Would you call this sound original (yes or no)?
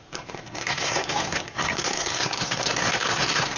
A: no